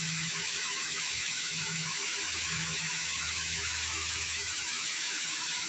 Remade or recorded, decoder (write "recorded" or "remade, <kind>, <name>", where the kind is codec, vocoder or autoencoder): remade, autoencoder, DAC-VAE